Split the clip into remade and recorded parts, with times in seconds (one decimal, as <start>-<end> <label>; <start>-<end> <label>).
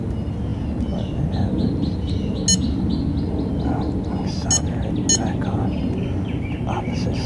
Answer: 0.0-7.3 recorded